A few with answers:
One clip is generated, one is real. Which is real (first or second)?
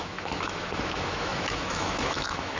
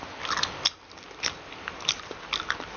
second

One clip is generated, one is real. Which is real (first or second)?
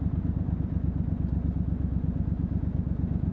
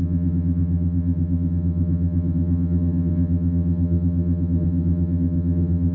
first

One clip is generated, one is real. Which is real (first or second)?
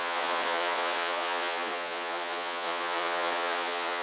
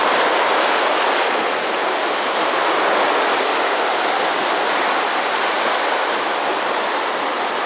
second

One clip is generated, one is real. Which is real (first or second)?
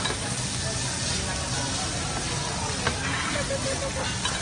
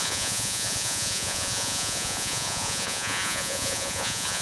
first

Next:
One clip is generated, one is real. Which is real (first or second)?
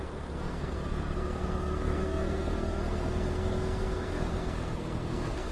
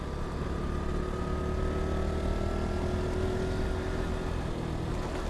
second